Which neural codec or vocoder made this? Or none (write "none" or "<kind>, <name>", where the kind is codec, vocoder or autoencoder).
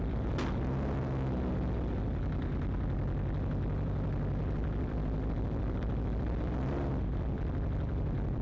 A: vocoder, BigVGAN v2